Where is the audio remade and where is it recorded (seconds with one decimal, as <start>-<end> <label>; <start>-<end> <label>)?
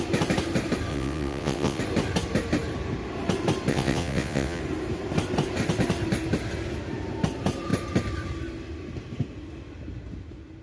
0.0-0.9 recorded; 0.9-1.8 remade; 1.8-3.7 recorded; 3.7-4.6 remade; 4.6-10.6 recorded